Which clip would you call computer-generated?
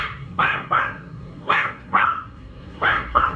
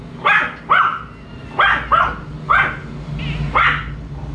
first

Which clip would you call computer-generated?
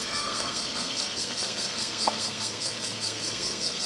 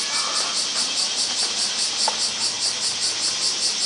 first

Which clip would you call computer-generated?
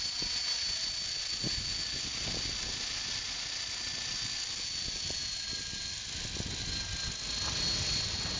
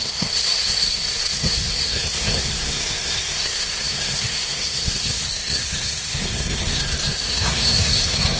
second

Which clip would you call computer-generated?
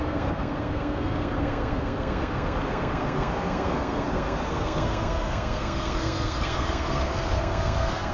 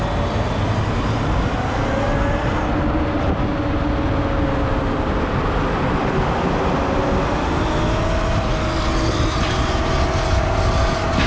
first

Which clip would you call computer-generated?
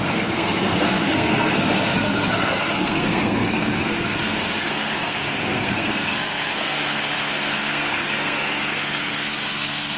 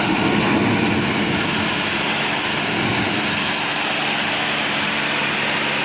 first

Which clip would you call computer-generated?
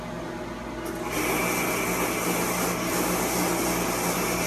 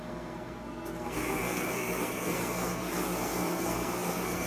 second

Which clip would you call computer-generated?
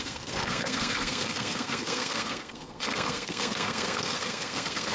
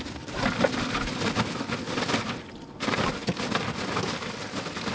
first